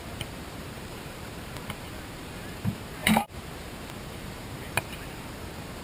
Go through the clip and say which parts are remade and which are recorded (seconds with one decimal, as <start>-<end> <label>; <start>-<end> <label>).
0.0-5.8 remade